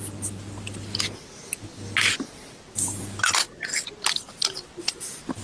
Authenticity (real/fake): real